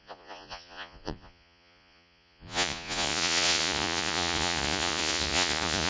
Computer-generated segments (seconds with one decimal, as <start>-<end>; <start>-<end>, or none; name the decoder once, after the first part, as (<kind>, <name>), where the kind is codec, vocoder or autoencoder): 0.0-5.9 (vocoder, Vocos)